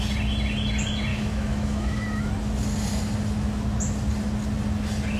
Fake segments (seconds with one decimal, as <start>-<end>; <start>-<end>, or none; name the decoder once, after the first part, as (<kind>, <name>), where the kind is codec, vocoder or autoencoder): 1.1-2.3 (autoencoder, DAC-VAE)